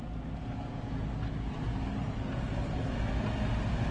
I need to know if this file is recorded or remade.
recorded